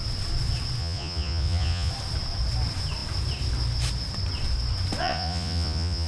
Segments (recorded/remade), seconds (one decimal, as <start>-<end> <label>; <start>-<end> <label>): 0.0-0.8 recorded; 0.8-1.9 remade; 1.9-5.0 recorded; 5.0-6.1 remade